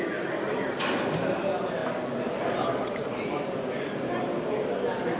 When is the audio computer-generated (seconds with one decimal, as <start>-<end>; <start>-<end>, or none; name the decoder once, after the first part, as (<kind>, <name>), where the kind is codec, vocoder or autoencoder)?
none